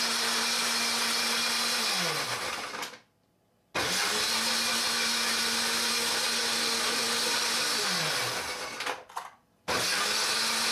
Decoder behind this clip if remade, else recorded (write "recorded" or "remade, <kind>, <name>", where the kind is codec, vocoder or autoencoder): recorded